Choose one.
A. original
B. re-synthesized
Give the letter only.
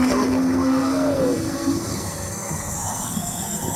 B